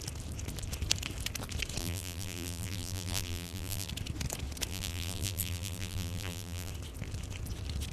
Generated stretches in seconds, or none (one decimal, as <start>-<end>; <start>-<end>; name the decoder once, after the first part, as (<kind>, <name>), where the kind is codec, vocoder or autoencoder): 1.8-3.9 (vocoder, BigVGAN v2); 4.7-6.7